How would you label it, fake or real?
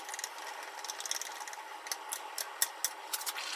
real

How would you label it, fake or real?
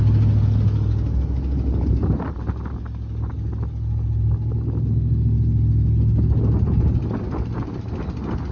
real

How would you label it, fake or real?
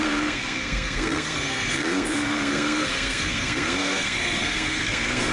fake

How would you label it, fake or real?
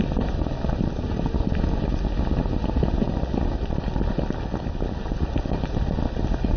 real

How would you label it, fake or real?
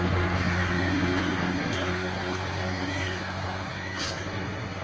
fake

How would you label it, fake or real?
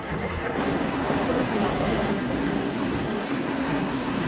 fake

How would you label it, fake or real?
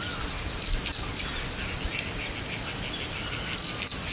real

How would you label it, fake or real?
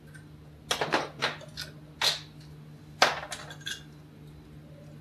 real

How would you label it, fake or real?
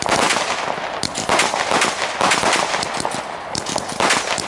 real